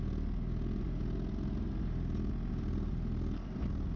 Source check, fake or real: real